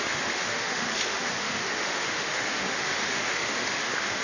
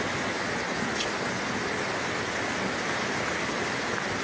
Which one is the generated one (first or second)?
first